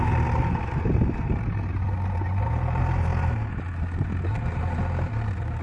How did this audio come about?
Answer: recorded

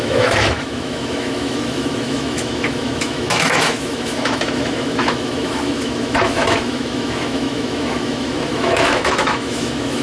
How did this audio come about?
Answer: remade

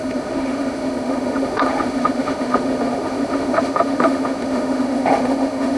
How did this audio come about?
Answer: remade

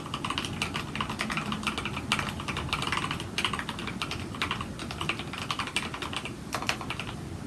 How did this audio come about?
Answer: recorded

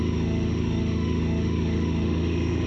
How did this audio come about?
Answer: remade